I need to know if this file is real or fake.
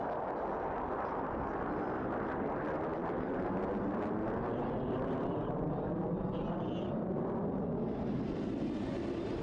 real